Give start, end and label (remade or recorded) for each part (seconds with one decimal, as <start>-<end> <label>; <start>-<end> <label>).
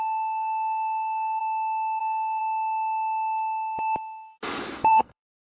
0.0-1.4 remade; 1.4-2.0 recorded; 2.0-2.4 remade; 2.4-4.9 recorded; 4.9-5.4 remade